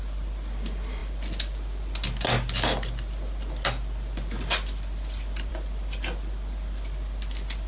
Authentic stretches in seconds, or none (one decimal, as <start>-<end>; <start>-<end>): 0.0-7.7